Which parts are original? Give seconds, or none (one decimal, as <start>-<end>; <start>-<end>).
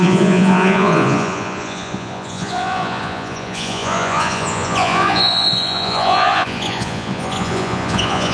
none